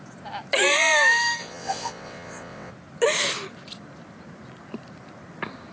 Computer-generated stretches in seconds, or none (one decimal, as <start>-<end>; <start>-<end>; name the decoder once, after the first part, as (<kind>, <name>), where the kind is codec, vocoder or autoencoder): 1.4-2.7 (vocoder, WaveNeXt)